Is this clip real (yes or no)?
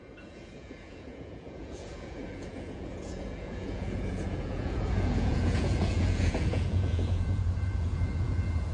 no